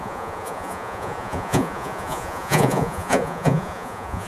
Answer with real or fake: fake